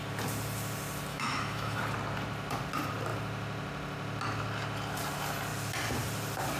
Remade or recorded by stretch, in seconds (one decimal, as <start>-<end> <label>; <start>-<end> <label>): 0.0-1.1 recorded; 1.1-1.8 remade; 1.8-6.6 recorded